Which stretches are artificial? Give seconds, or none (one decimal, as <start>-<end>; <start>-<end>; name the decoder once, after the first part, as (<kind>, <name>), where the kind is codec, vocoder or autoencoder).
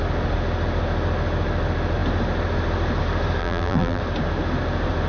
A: 3.4-4.0 (vocoder, BigVGAN v2)